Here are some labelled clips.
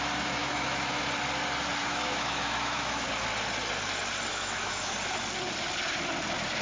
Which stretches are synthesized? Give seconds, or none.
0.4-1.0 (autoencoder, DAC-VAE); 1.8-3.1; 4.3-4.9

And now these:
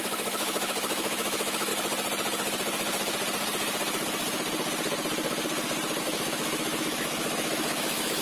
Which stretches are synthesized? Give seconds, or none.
0.0-1.7 (autoencoder, DAC-VAE); 6.0-8.2